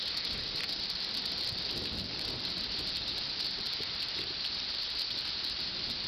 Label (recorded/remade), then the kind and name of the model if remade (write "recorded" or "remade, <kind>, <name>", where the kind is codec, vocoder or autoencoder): recorded